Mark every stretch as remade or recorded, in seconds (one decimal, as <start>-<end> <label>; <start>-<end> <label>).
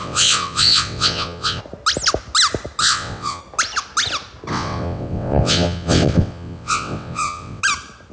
0.0-1.6 remade; 1.6-2.8 recorded; 2.8-3.4 remade; 3.4-4.5 recorded; 4.5-7.6 remade; 7.6-8.1 recorded